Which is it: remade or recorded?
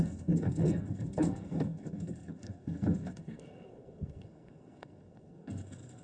remade